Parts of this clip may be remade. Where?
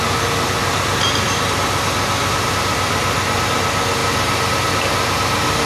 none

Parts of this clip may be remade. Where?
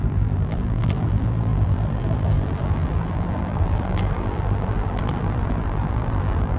0.0-6.6 (vocoder, BigVGAN v2)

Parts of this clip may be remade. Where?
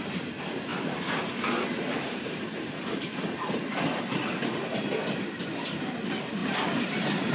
0.7-4.4 (vocoder, BigVGAN v2)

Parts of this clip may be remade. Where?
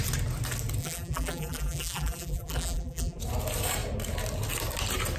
0.8-3.2 (vocoder, BigVGAN v2)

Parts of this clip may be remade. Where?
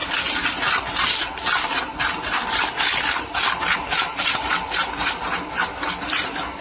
none